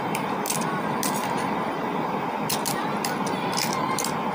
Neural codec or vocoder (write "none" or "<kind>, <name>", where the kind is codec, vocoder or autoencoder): none